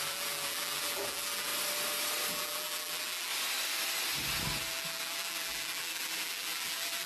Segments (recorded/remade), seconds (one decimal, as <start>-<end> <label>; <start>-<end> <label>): 0.0-1.5 remade; 1.5-2.3 recorded; 2.3-3.3 remade; 3.3-4.6 recorded; 4.6-7.1 remade